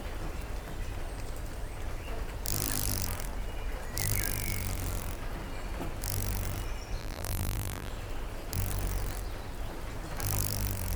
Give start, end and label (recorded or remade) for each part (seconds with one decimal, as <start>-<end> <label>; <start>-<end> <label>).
0.0-7.0 recorded; 7.0-7.9 remade; 7.9-11.0 recorded